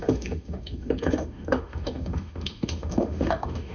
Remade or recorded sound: remade